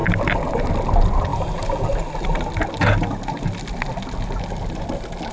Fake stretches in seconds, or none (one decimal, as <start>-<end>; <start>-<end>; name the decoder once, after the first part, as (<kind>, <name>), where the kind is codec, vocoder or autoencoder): none